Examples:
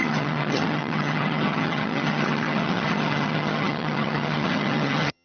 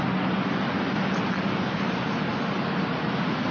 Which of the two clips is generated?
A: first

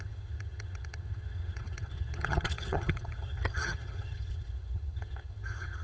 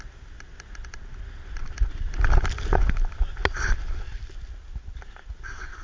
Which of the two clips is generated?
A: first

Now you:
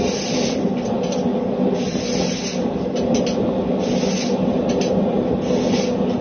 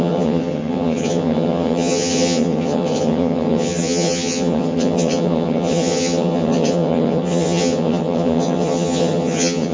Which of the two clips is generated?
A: second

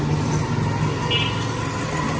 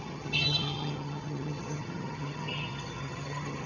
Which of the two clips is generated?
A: second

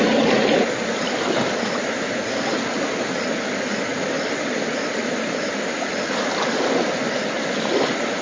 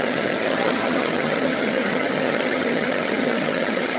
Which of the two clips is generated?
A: second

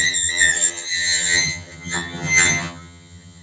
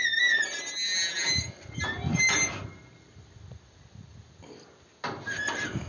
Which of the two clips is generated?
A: first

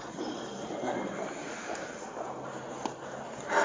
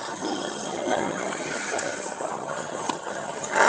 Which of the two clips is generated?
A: second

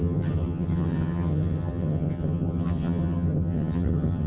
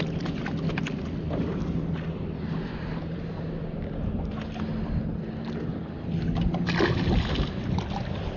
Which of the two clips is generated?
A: first